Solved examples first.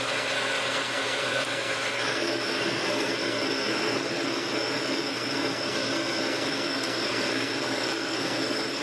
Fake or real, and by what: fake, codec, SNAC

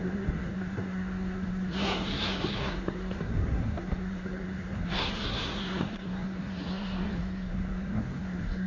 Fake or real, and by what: fake, codec, SNAC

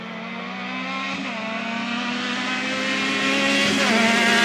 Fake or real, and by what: real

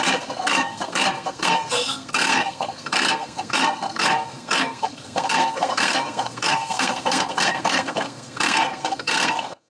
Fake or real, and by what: fake, codec, SNAC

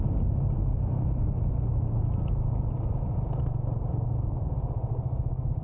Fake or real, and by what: real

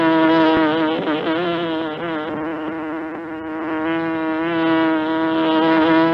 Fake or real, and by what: real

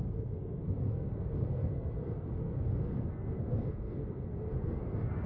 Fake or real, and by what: fake, codec, SNAC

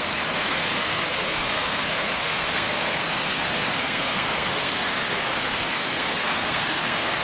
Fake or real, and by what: fake, codec, SNAC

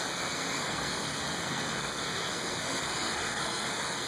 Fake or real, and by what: fake, codec, SNAC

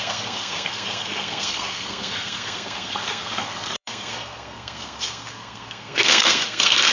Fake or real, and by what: fake, codec, SNAC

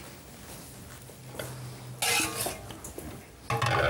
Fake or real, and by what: real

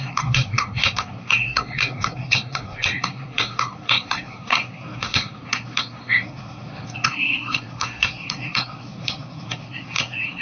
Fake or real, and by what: fake, codec, SNAC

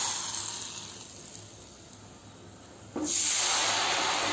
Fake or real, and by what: real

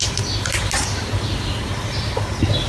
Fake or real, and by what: real